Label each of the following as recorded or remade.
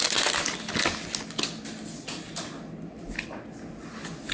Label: recorded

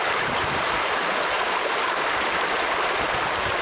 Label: remade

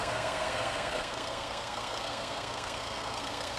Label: remade